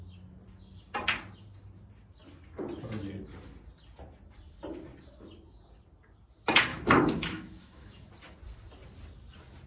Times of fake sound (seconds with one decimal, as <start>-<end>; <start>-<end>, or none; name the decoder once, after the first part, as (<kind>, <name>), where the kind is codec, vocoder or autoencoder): 6.7-8.1 (autoencoder, DAC-VAE)